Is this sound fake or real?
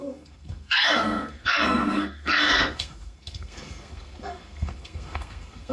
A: fake